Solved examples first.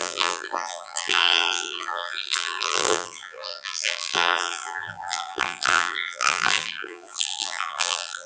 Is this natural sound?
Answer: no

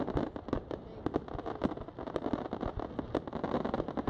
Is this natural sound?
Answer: yes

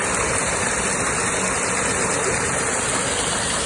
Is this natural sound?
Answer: yes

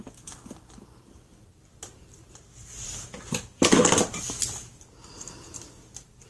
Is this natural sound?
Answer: no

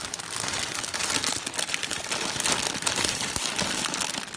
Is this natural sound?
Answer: yes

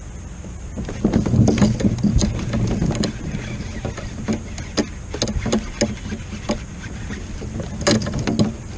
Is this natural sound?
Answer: yes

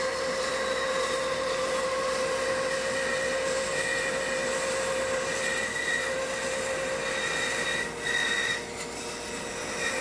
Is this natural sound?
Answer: yes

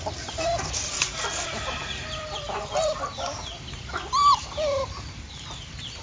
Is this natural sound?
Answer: no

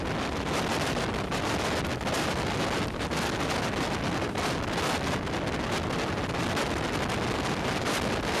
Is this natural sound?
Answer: yes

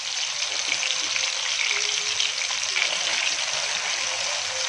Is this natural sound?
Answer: yes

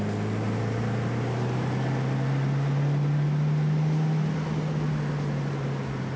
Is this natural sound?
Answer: yes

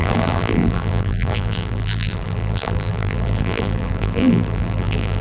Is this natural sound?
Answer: no